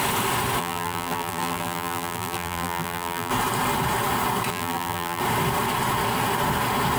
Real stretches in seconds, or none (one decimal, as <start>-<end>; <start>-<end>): 0.0-0.6; 3.3-4.5; 5.2-7.0